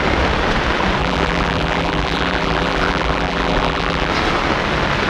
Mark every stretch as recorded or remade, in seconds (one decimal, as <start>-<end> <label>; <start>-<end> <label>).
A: 0.0-1.0 recorded; 1.0-4.1 remade; 4.1-5.1 recorded